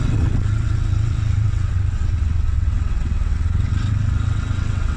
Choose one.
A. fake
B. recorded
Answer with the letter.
A